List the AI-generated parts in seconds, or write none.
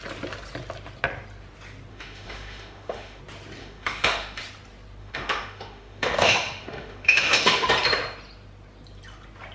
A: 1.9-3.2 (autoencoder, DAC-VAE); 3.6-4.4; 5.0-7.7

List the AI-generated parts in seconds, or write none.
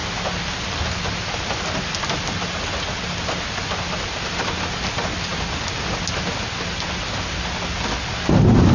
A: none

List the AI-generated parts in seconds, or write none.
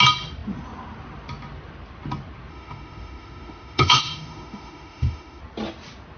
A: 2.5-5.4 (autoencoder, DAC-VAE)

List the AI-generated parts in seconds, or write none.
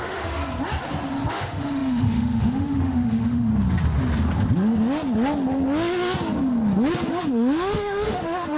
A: 0.0-0.4 (autoencoder, DAC-VAE); 1.3-3.5; 7.2-8.6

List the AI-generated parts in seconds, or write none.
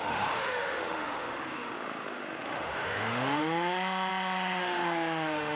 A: 0.0-5.6 (autoencoder, DAC-VAE)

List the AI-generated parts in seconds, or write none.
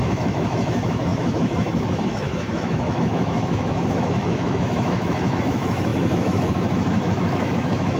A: 0.0-8.0 (autoencoder, DAC-VAE)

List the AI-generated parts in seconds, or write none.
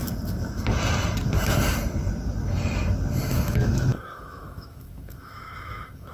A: 3.3-6.1 (autoencoder, DAC-VAE)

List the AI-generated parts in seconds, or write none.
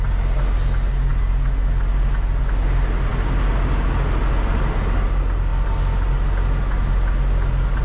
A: none